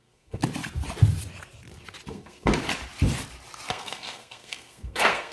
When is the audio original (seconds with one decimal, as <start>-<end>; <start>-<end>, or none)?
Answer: 0.4-2.1; 2.5-3.7